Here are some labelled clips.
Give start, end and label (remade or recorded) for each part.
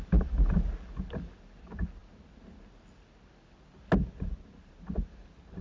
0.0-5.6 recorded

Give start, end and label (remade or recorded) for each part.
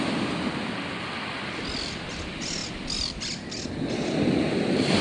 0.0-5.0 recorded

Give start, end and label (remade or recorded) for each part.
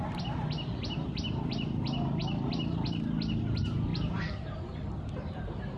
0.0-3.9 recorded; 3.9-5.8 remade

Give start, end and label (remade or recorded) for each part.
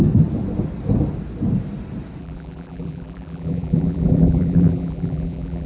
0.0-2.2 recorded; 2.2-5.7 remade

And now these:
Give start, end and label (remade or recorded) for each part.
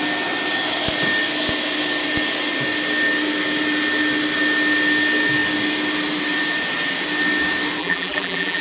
0.0-7.8 recorded; 7.8-8.6 remade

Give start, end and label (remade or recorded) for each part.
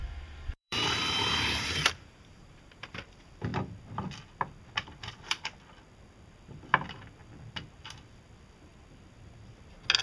0.0-3.0 remade; 3.0-10.0 recorded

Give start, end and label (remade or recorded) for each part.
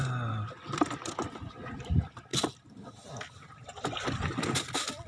0.0-5.1 recorded